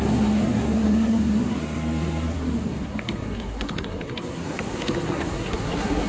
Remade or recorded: remade